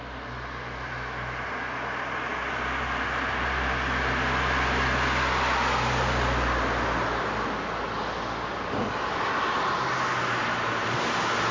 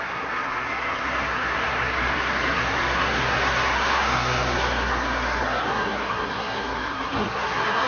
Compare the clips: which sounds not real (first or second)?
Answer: second